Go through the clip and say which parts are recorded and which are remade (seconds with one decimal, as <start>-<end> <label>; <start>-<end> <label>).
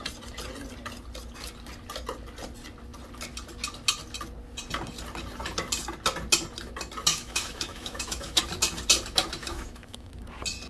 0.0-7.1 recorded; 7.1-8.4 remade; 8.4-9.4 recorded; 9.4-10.1 remade; 10.1-10.7 recorded